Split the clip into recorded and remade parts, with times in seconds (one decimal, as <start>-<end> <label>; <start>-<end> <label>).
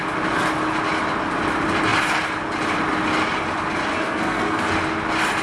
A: 0.0-3.9 recorded; 3.9-4.7 remade; 4.7-5.4 recorded